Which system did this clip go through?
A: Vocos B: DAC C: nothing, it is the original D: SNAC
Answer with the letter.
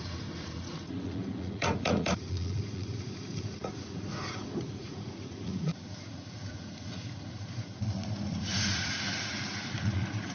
A